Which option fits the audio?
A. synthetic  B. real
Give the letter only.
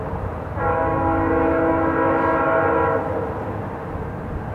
B